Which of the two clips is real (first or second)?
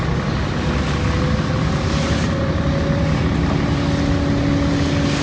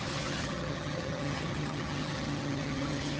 first